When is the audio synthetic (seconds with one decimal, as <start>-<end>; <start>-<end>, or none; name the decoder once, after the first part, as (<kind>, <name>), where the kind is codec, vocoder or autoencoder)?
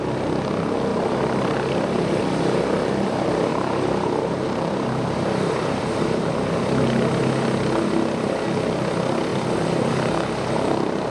0.9-2.2 (vocoder, BigVGAN v2); 3.5-6.3